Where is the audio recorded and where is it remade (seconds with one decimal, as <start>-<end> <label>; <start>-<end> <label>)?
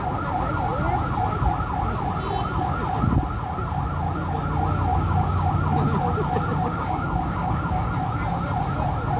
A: 0.0-4.9 recorded; 4.9-5.5 remade; 5.5-6.5 recorded; 6.5-7.9 remade; 7.9-9.2 recorded